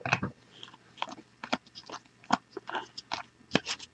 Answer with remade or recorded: recorded